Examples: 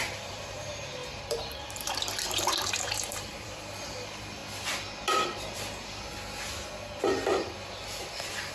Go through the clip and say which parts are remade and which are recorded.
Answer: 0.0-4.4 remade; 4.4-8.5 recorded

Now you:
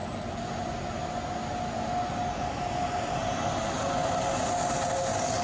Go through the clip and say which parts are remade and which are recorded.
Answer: 0.0-5.4 recorded

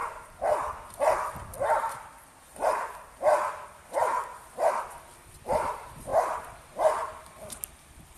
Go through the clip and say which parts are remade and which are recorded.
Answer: 0.0-4.7 recorded; 4.7-8.2 remade

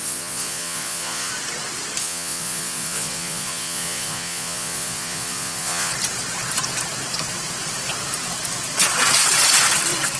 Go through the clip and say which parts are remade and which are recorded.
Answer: 0.0-1.3 remade; 1.3-2.0 recorded; 2.0-5.9 remade; 5.9-10.2 recorded

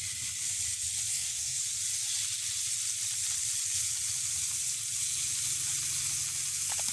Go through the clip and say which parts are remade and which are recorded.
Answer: 0.0-1.1 recorded; 1.1-1.6 remade; 1.6-6.9 recorded

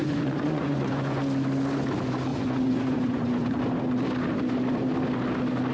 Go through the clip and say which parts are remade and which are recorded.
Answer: 0.0-1.2 remade; 1.2-2.3 recorded; 2.3-3.6 remade; 3.6-5.7 recorded

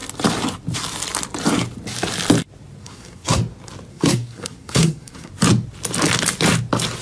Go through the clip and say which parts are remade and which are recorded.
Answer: 0.0-2.8 recorded; 2.8-3.4 remade; 3.4-3.9 recorded; 3.9-5.3 remade; 5.3-7.0 recorded